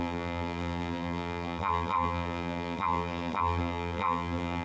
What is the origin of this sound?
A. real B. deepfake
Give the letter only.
B